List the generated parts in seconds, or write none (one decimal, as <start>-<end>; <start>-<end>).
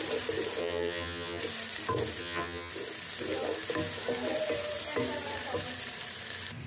0.6-1.4; 2.2-2.7